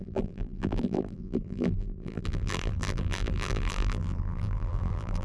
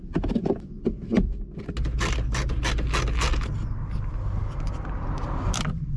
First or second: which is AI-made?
first